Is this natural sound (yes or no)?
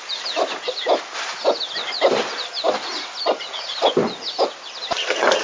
yes